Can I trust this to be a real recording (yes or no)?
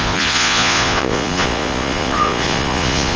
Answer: no